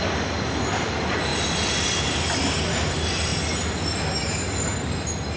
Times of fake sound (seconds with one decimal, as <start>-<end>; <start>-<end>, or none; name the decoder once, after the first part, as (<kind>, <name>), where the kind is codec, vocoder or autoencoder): none